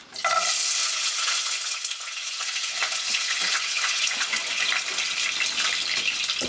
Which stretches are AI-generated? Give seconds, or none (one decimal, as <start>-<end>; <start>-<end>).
0.8-4.7